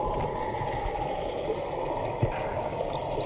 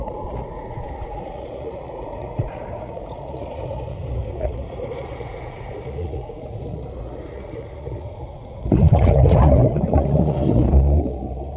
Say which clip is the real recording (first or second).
first